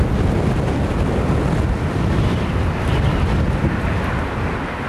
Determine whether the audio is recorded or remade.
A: recorded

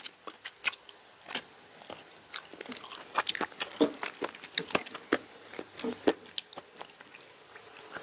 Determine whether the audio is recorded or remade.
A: recorded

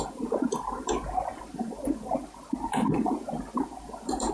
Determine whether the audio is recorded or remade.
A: remade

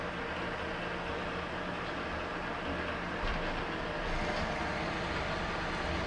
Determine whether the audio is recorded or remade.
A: recorded